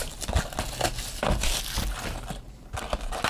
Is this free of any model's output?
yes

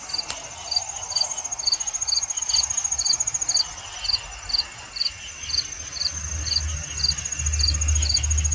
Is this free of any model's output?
yes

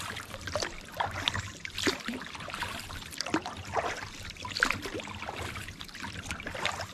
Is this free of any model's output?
yes